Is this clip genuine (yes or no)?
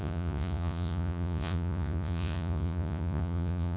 no